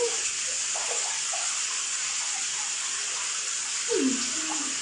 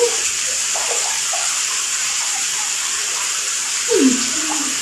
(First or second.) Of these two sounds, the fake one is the second